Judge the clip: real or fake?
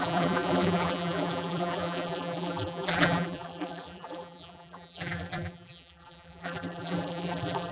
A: fake